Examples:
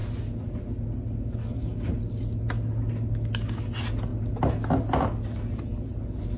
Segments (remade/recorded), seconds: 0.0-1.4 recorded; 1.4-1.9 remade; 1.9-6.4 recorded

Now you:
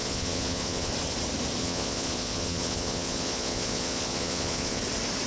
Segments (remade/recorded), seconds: 0.0-0.9 remade; 0.9-1.6 recorded; 1.6-4.8 remade; 4.8-5.3 recorded

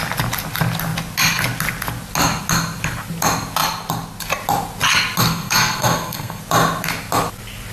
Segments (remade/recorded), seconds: 0.0-5.2 recorded; 5.2-6.4 remade; 6.4-7.7 recorded

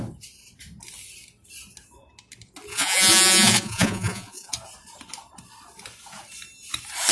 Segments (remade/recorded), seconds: 0.0-2.7 recorded; 2.7-4.5 remade; 4.5-7.1 recorded

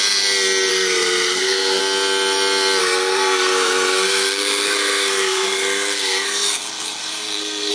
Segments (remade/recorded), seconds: 0.0-0.7 recorded; 0.7-1.8 remade; 1.8-2.8 recorded; 2.8-7.7 remade

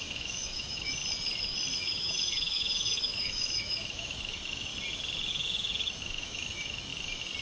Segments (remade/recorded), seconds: 0.0-1.0 remade; 1.0-1.8 recorded; 1.8-4.7 remade; 4.7-5.3 recorded; 5.3-6.9 remade; 6.9-7.4 recorded

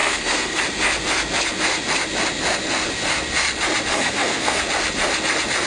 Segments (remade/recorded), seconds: 0.0-0.6 remade; 0.6-3.9 recorded; 3.9-4.6 remade; 4.6-5.7 recorded

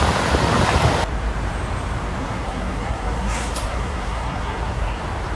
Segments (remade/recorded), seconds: 0.0-2.2 recorded; 2.2-5.0 remade; 5.0-5.4 recorded